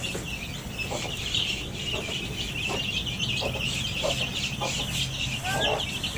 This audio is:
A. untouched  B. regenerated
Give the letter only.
A